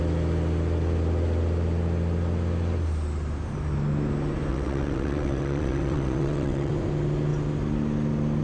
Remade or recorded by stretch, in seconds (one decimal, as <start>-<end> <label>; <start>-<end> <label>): 0.0-4.5 recorded; 4.5-6.7 remade; 6.7-8.4 recorded